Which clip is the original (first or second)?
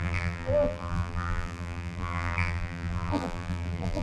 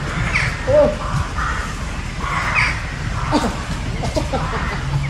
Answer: second